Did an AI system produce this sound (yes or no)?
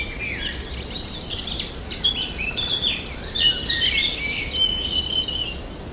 no